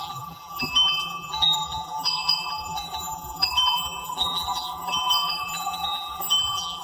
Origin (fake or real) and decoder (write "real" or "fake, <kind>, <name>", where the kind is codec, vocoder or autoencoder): fake, vocoder, BigVGAN v2